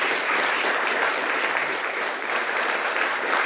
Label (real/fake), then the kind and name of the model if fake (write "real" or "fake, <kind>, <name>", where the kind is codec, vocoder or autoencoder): fake, vocoder, BigVGAN v2